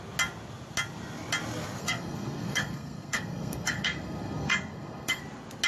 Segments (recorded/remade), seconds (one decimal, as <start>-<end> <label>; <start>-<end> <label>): 0.0-1.8 recorded; 1.8-5.2 remade; 5.2-5.7 recorded